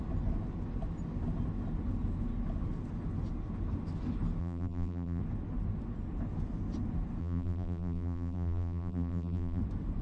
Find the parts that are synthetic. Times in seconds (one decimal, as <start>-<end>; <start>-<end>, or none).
4.4-5.2; 7.2-9.6